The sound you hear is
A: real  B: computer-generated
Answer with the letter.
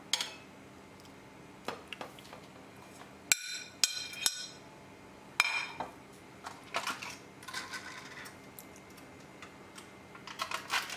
A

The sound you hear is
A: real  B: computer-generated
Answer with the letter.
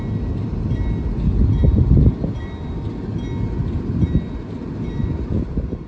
A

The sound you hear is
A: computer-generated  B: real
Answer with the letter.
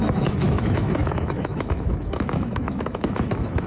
A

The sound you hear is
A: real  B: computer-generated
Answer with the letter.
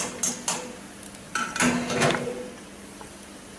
A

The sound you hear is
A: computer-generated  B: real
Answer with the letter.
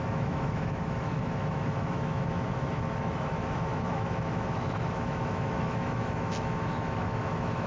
A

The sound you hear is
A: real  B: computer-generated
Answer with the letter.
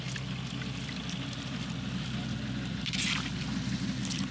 A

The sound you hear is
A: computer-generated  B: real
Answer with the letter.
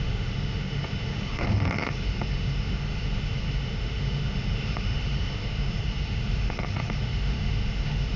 A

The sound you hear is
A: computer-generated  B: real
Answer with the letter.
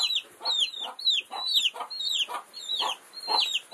B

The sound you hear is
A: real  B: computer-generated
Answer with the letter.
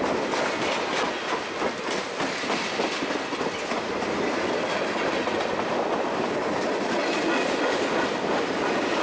A